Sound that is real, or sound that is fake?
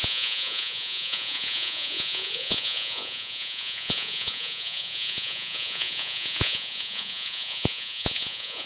fake